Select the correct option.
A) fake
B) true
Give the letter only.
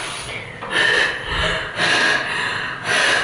B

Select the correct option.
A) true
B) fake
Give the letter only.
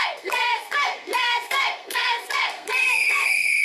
B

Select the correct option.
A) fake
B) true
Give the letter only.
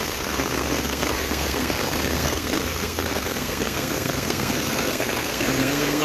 A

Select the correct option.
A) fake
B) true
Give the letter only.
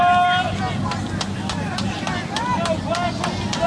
B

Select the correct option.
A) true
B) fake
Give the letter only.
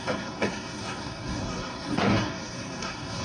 B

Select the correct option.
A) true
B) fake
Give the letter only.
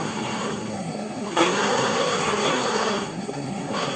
B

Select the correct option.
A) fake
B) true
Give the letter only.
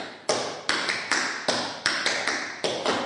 B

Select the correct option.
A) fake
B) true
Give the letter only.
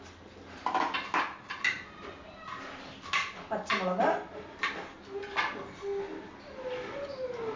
B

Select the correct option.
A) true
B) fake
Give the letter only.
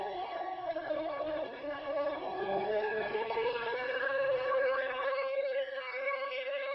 B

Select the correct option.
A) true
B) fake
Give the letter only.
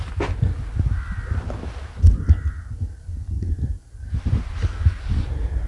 A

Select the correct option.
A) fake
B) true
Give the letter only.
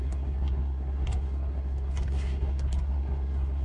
A